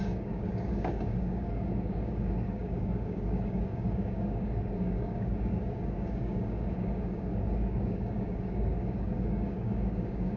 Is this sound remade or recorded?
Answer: remade